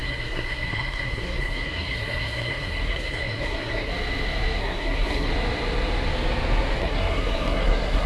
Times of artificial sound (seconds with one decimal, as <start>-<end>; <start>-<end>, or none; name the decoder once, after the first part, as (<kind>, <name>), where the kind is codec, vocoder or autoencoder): 0.0-3.9 (codec, SNAC); 4.6-5.3; 6.8-8.1